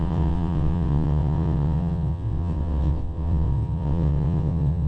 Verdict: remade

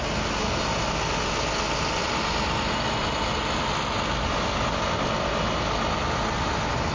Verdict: recorded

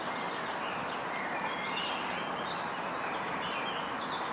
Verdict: remade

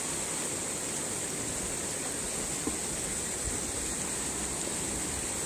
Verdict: recorded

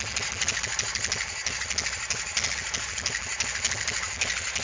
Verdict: recorded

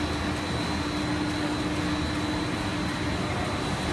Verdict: recorded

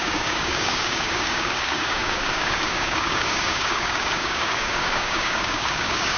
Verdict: remade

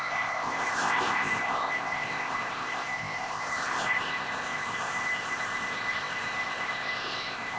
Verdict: remade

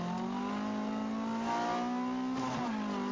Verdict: recorded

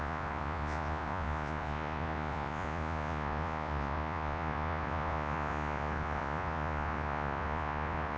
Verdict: remade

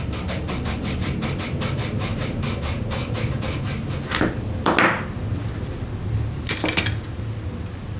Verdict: recorded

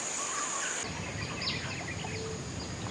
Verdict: recorded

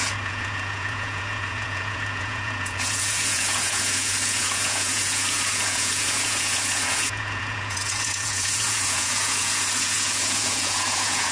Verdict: remade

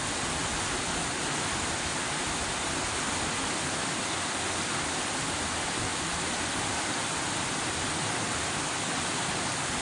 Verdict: recorded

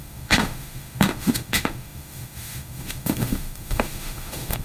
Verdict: remade